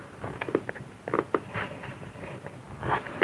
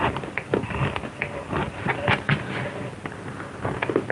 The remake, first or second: first